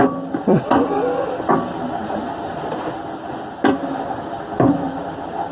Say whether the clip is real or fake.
real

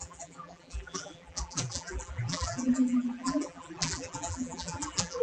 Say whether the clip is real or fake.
fake